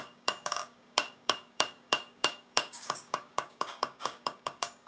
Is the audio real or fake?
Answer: fake